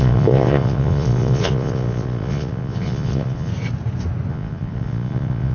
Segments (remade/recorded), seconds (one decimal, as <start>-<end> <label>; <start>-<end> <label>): 0.0-3.5 remade; 3.5-4.3 recorded; 4.3-5.5 remade